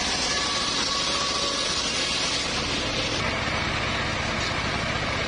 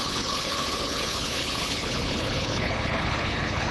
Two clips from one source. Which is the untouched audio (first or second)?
first